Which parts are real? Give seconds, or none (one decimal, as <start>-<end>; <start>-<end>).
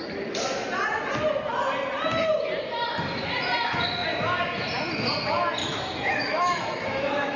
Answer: 0.0-5.6